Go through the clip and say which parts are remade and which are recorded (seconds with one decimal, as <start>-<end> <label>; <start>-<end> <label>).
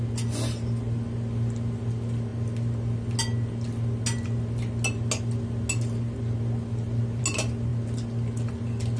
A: 0.0-9.0 recorded